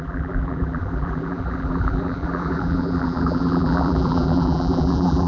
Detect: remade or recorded remade